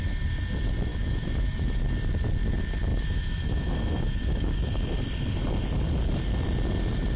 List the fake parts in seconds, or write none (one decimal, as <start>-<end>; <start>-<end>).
0.9-1.8; 2.9-4.7